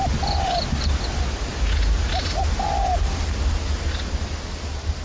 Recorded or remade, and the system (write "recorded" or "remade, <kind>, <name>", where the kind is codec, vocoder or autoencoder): recorded